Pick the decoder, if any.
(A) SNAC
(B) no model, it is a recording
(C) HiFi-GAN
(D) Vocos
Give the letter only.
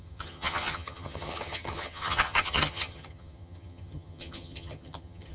C